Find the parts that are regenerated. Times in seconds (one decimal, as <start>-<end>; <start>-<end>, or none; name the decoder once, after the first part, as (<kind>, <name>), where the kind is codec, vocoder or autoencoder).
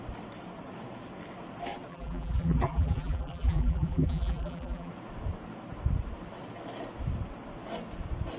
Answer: 1.9-4.9 (vocoder, BigVGAN v2)